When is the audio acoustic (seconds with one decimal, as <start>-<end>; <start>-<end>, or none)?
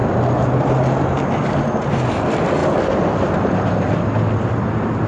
0.0-5.1